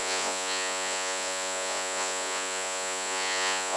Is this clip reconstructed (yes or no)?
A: yes